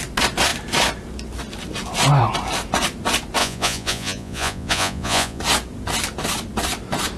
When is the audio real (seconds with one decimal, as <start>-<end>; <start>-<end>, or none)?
0.0-3.4; 5.4-7.2